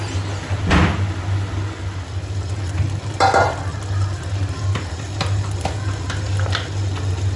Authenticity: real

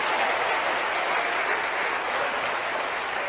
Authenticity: real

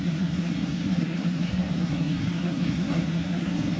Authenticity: fake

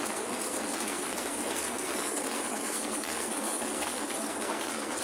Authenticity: fake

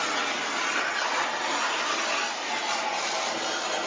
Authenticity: real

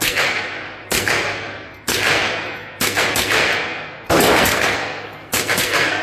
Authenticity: fake